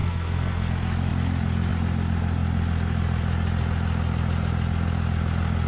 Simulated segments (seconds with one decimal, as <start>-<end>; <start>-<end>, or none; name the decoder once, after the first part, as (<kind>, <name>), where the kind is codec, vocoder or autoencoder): 0.0-0.7 (codec, SNAC)